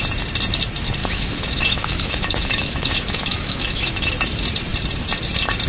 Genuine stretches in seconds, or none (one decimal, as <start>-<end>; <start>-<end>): 0.0-1.0; 4.1-5.7